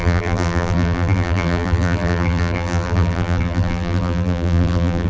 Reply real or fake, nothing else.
fake